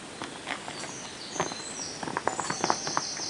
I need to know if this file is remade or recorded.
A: recorded